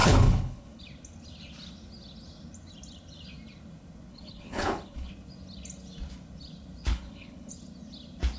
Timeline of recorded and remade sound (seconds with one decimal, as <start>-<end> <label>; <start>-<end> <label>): 0.0-0.8 remade; 0.8-4.1 recorded; 4.1-5.1 remade; 5.1-6.9 recorded; 6.9-7.5 remade; 7.5-8.4 recorded